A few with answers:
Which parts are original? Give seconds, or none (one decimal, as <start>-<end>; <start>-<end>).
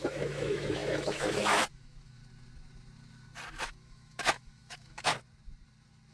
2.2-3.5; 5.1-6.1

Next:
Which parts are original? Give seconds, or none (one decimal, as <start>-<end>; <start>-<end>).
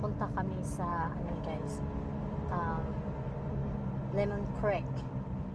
0.0-3.6; 4.1-5.5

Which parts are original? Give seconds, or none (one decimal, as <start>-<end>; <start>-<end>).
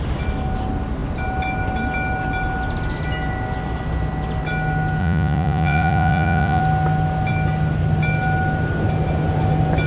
0.0-5.0; 6.6-9.9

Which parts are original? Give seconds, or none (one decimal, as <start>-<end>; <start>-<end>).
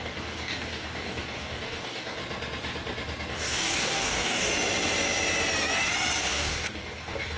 2.2-3.3; 4.5-6.2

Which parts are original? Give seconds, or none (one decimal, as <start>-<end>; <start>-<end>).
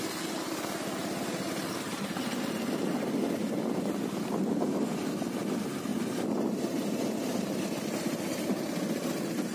0.0-1.0; 2.2-9.5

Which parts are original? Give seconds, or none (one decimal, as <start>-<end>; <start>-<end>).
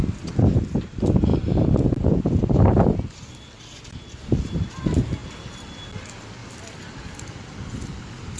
0.0-8.4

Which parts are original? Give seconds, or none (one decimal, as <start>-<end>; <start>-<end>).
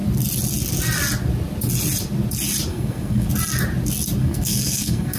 0.0-2.7; 3.3-4.2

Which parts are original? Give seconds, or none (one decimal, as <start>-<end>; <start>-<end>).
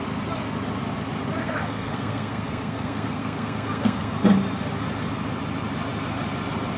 0.0-1.4; 4.1-6.8